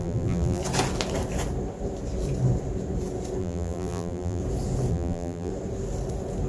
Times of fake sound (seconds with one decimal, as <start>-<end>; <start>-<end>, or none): 0.0-0.6; 3.4-4.4; 4.9-5.5